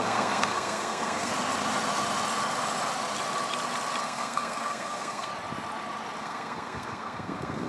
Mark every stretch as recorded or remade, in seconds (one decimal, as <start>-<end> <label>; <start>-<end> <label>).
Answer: 0.0-1.3 remade; 1.3-4.0 recorded; 4.0-5.3 remade; 5.3-6.2 recorded; 6.2-7.7 remade